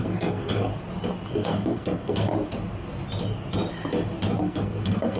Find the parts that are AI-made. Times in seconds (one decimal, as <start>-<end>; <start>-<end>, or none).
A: 0.0-0.7; 1.3-2.3; 4.4-5.2